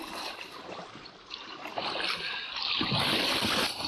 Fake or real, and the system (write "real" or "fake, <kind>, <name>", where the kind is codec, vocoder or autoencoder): real